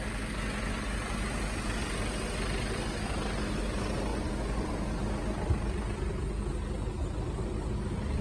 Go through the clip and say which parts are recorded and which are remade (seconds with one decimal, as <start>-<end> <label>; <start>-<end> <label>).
0.0-4.1 recorded; 4.1-4.7 remade; 4.7-8.2 recorded